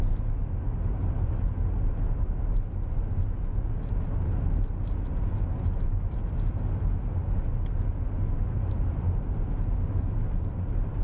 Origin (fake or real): real